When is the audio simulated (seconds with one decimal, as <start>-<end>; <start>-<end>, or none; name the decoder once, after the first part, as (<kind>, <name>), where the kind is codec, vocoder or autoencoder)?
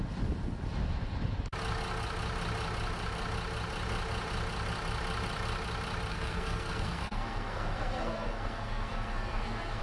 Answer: 6.1-9.8 (codec, SNAC)